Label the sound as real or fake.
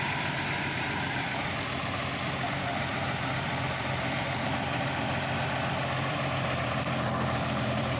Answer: fake